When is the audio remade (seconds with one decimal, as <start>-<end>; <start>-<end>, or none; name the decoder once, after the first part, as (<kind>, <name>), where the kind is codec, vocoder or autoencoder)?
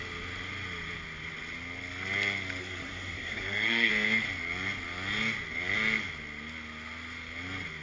2.6-3.9 (codec, SNAC)